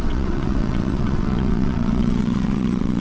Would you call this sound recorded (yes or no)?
no